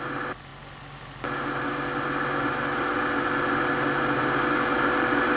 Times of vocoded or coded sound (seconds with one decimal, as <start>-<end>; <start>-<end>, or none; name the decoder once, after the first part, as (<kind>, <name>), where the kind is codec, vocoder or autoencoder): none

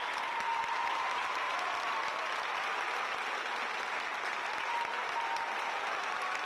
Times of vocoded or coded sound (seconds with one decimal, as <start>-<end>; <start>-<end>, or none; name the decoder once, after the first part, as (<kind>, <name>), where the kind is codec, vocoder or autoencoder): none